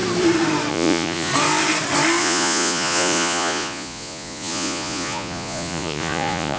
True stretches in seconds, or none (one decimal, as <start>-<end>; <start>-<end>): 0.0-0.7; 1.3-2.2